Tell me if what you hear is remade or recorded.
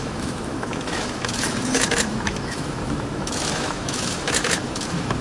remade